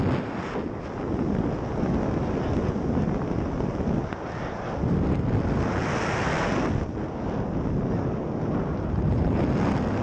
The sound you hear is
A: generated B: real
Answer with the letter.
B